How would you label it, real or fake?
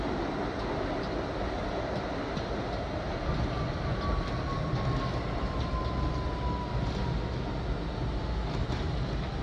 real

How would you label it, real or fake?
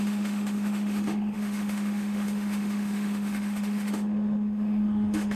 fake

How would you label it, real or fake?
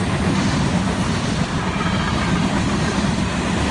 real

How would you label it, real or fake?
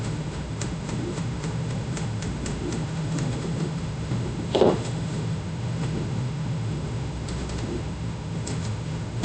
fake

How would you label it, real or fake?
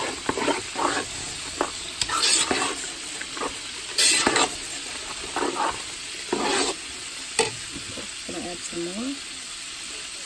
real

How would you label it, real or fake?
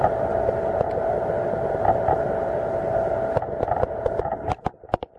real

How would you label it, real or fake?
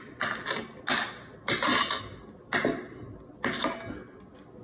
real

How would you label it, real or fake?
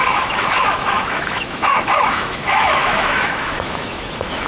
fake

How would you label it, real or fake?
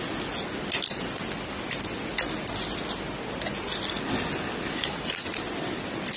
real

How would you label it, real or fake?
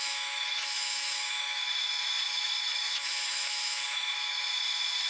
fake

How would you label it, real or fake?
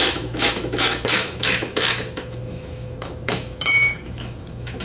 fake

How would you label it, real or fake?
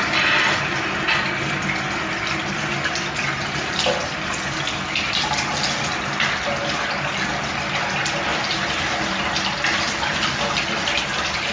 real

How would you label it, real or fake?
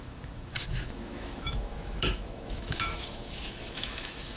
fake